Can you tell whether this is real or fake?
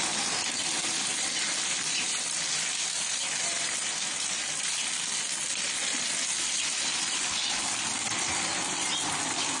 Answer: real